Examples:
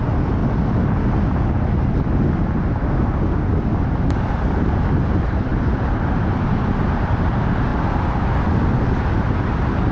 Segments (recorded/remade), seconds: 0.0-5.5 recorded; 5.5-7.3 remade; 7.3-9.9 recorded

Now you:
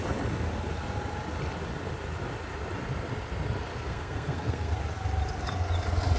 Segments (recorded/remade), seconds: 0.0-3.7 recorded; 3.7-4.8 remade; 4.8-6.2 recorded

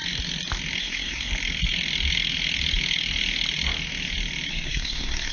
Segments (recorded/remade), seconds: 0.0-0.8 recorded; 0.8-1.3 remade; 1.3-4.5 recorded; 4.5-5.3 remade

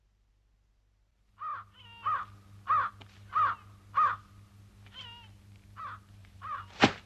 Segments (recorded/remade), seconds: 0.0-6.2 recorded; 6.2-7.1 remade

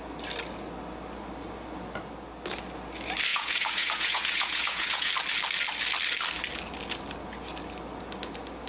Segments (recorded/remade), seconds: 0.0-3.3 recorded; 3.3-5.1 remade; 5.1-8.7 recorded

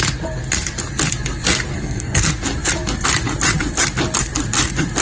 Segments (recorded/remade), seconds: 0.0-1.7 recorded; 1.7-2.2 remade; 2.2-5.0 recorded